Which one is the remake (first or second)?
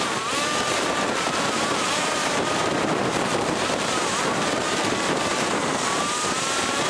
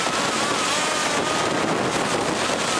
first